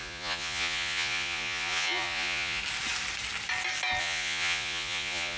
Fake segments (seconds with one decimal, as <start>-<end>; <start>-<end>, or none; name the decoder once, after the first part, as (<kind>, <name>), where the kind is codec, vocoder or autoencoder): 0.0-2.6 (vocoder, Vocos); 4.0-5.4